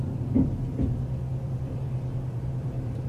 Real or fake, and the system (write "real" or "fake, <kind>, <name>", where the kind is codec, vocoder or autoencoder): fake, vocoder, BigVGAN v2